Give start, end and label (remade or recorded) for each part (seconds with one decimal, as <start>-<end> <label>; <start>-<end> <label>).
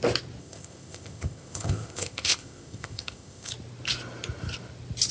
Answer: 0.0-0.4 recorded; 0.4-3.5 remade; 3.5-5.1 recorded